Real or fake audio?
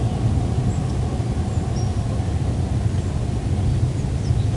real